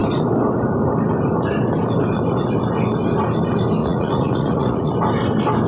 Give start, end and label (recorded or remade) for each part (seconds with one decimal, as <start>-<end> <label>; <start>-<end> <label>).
0.0-3.8 recorded; 3.8-4.9 remade; 4.9-5.7 recorded

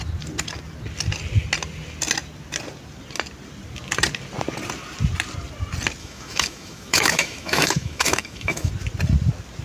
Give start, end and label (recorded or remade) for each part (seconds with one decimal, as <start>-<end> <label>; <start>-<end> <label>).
0.0-6.0 recorded; 6.0-8.7 remade; 8.7-9.6 recorded

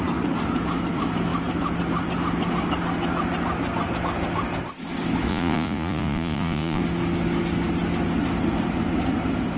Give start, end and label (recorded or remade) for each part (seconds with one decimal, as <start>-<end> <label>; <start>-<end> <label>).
0.0-5.3 recorded; 5.3-6.8 remade; 6.8-9.6 recorded

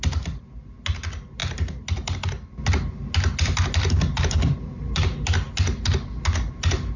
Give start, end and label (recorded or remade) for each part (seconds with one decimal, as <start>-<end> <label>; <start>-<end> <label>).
0.0-7.0 recorded

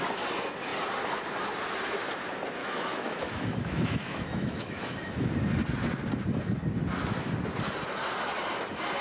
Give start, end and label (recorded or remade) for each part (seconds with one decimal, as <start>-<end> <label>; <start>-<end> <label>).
0.0-2.6 recorded; 2.6-5.3 remade; 5.3-9.0 recorded

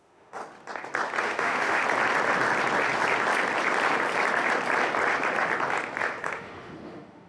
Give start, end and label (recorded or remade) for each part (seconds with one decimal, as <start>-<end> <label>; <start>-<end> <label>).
0.0-0.4 remade; 0.4-1.2 recorded; 1.2-1.8 remade; 1.8-6.2 recorded; 6.2-7.3 remade

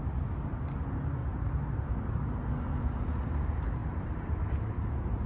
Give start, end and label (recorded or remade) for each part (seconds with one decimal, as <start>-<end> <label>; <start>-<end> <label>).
0.0-1.2 recorded; 1.2-2.1 remade; 2.1-3.8 recorded; 3.8-5.3 remade

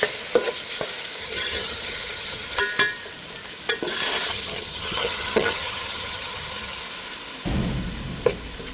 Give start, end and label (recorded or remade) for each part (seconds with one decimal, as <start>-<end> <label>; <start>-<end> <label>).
0.0-1.2 recorded; 1.2-2.6 remade; 2.6-4.3 recorded; 4.3-6.8 remade; 6.8-8.7 recorded